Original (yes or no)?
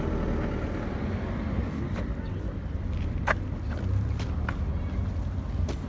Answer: yes